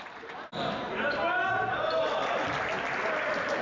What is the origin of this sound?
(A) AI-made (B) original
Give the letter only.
B